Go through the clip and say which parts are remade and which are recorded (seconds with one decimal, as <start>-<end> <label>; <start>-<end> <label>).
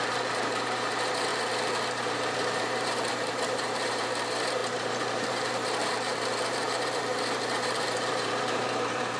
0.0-9.2 remade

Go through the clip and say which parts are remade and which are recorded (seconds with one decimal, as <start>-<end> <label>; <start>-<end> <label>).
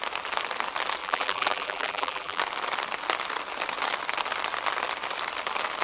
0.0-1.0 recorded; 1.0-2.4 remade; 2.4-5.8 recorded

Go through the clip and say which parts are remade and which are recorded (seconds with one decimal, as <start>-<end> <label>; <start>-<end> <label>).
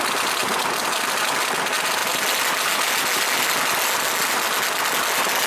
0.0-5.5 recorded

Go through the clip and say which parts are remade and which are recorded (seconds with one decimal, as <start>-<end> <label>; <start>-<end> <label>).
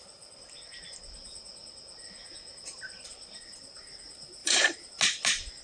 0.0-4.4 recorded; 4.4-4.9 remade; 4.9-5.6 recorded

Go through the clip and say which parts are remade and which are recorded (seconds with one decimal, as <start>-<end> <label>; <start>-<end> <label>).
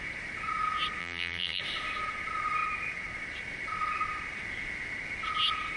0.0-1.0 recorded; 1.0-1.6 remade; 1.6-5.8 recorded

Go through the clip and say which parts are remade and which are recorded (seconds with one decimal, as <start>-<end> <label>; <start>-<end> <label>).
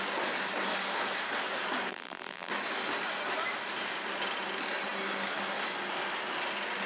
0.0-1.9 recorded; 1.9-2.5 remade; 2.5-6.9 recorded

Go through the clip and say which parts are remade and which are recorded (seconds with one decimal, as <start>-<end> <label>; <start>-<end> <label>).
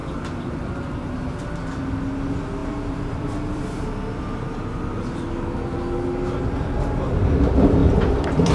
0.0-0.7 remade; 0.7-2.6 recorded; 2.6-3.6 remade; 3.6-8.5 recorded